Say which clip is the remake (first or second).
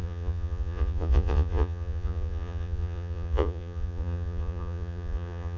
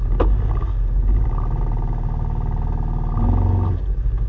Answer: first